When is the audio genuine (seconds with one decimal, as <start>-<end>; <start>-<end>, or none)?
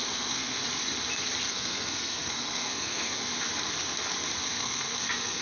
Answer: 0.6-1.5; 3.2-4.4